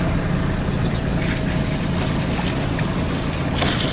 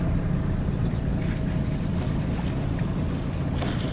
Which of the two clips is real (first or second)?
first